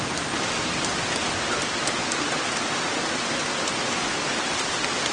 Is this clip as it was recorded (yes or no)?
yes